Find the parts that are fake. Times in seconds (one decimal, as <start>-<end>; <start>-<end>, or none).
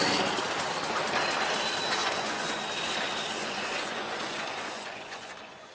2.0-2.6; 3.4-5.7